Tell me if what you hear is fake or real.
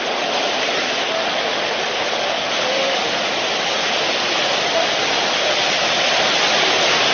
real